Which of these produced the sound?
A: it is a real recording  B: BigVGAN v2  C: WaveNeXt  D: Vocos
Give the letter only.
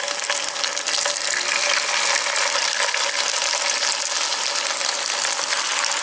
A